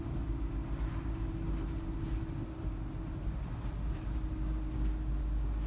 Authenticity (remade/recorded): recorded